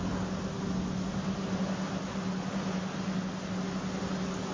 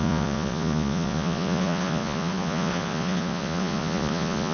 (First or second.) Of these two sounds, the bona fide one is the first